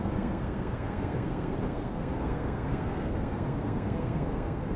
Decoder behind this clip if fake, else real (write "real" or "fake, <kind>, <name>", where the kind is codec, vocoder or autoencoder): fake, codec, SNAC